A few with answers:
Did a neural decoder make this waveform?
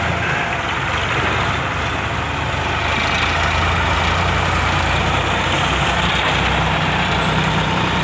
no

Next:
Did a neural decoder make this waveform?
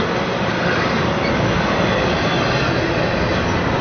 no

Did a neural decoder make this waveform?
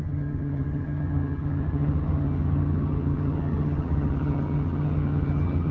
yes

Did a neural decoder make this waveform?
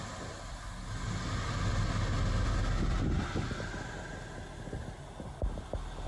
no